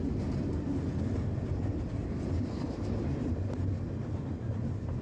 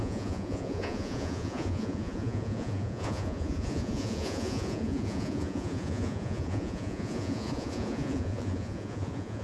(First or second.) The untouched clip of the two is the first